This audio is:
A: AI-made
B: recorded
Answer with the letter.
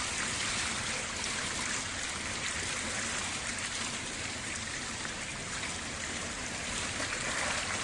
B